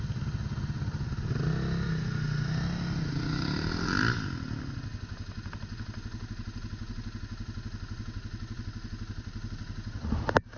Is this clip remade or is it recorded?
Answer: recorded